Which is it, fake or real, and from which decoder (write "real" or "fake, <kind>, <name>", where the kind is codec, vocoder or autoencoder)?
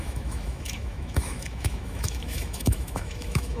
fake, autoencoder, DAC-VAE